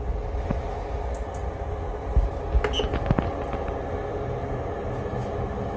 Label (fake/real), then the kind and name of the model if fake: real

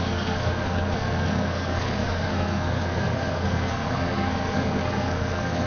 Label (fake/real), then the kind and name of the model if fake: fake, codec, SNAC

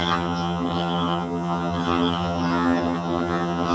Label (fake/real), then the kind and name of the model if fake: fake, vocoder, HiFi-GAN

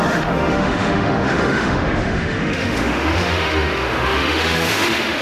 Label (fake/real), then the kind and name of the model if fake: fake, autoencoder, DAC-VAE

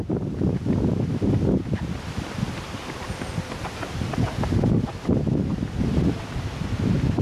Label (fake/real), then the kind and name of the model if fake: real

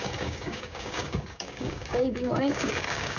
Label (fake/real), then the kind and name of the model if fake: fake, codec, DAC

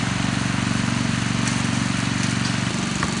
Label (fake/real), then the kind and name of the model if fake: real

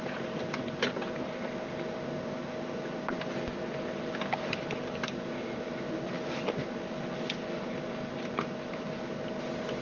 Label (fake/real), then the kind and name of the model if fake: real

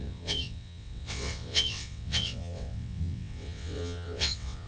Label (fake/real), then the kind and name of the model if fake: fake, vocoder, WaveNeXt